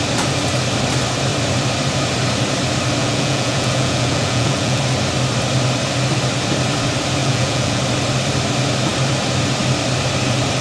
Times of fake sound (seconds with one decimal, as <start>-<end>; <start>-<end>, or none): 3.0-4.8; 7.2-7.8